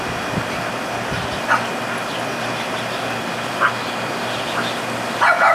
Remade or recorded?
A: recorded